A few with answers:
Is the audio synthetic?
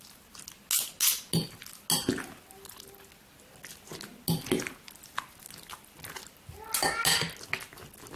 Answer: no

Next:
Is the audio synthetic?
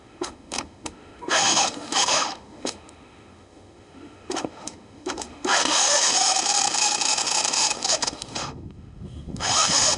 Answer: yes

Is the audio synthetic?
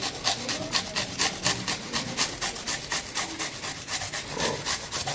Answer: no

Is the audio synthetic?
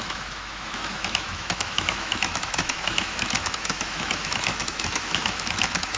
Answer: yes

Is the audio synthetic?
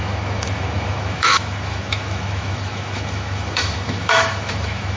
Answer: yes